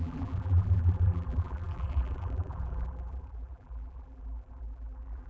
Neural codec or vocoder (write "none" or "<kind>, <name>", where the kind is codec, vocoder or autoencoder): vocoder, BigVGAN v2